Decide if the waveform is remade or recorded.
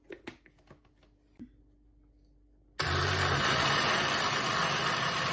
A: recorded